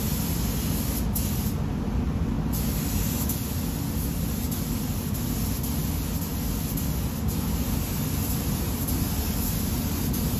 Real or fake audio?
real